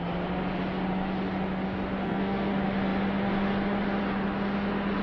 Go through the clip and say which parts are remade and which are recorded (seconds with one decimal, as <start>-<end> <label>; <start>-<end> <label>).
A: 0.0-2.0 recorded; 2.0-2.5 remade; 2.5-5.0 recorded